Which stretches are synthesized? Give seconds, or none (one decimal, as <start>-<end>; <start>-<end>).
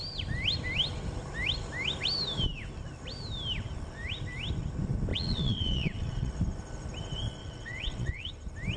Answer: 5.1-6.3; 7.4-8.3